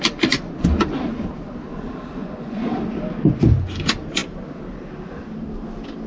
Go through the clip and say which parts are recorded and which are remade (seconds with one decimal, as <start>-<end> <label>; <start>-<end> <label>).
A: 0.0-2.2 recorded; 2.2-2.7 remade; 2.7-6.1 recorded